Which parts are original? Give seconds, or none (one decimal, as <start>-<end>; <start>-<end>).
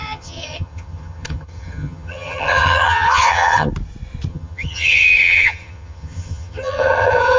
3.7-4.3